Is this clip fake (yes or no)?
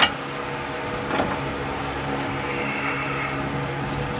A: no